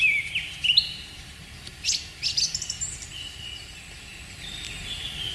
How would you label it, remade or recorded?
recorded